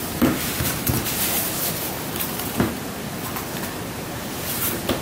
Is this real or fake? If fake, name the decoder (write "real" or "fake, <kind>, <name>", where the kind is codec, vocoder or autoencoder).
real